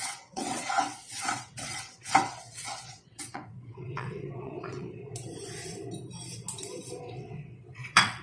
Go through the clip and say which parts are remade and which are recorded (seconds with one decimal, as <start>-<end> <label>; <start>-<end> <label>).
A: 0.0-5.0 remade; 5.0-7.0 recorded; 7.0-8.2 remade